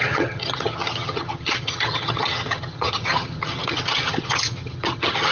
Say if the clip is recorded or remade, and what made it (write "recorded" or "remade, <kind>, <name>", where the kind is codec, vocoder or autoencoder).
remade, vocoder, HiFi-GAN